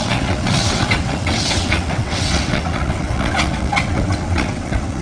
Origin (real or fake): fake